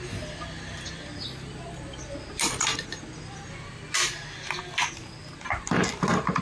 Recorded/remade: recorded